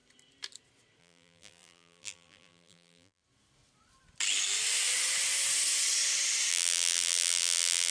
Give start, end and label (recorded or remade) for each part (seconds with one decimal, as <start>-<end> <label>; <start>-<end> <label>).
0.0-1.0 recorded; 1.0-3.2 remade; 3.2-6.5 recorded; 6.5-7.9 remade